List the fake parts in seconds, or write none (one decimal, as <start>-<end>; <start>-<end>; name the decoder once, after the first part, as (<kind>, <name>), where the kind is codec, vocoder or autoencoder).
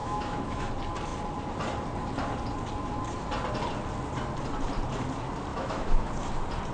0.0-0.7 (autoencoder, DAC-VAE); 5.5-6.1